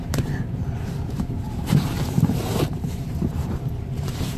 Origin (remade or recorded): remade